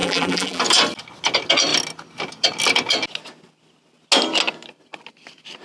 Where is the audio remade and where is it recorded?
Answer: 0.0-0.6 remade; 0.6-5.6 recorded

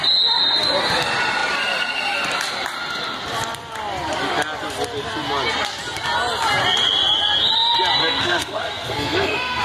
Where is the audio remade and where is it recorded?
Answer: 0.0-8.0 recorded; 8.0-9.6 remade

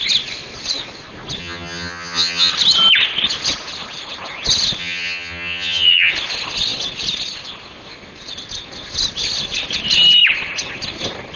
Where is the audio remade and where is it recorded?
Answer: 0.0-1.4 recorded; 1.4-2.5 remade; 2.5-4.8 recorded; 4.8-6.1 remade; 6.1-11.4 recorded

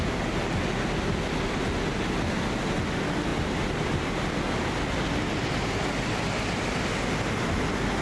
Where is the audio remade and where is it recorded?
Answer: 0.0-8.0 recorded

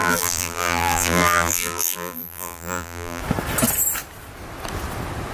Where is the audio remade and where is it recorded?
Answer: 0.0-3.2 remade; 3.2-5.3 recorded

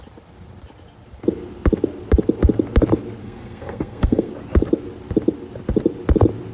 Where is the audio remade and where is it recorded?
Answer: 0.0-3.2 recorded; 3.2-4.3 remade; 4.3-6.5 recorded